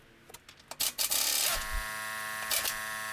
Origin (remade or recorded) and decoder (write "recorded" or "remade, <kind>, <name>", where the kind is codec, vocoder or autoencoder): recorded